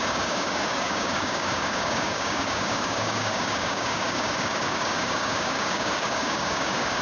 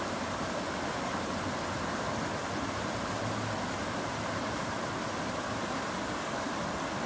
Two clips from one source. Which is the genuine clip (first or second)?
second